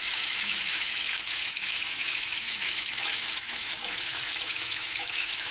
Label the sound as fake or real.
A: fake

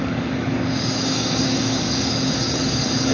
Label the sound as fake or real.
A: fake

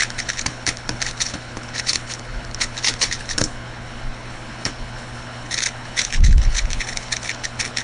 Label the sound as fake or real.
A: fake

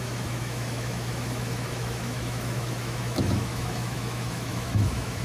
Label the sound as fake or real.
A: fake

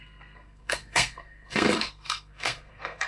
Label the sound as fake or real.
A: fake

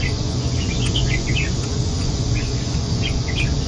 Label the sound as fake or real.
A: fake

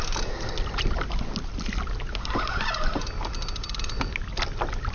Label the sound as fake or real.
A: real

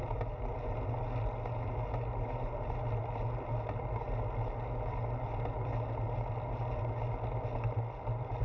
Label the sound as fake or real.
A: real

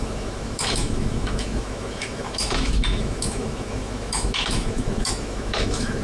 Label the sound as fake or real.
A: fake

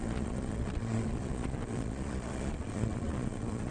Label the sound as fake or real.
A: fake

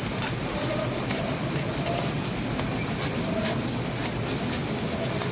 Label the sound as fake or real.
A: real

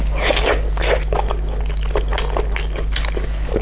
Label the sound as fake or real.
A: real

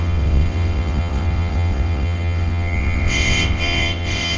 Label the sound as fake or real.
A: fake